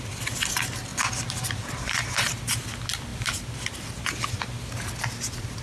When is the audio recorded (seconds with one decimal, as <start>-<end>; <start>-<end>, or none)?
0.0-0.9; 2.4-3.1; 3.9-5.6